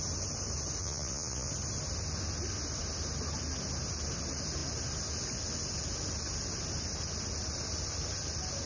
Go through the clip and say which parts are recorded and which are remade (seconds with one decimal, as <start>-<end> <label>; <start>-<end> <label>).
0.0-0.8 recorded; 0.8-1.5 remade; 1.5-8.7 recorded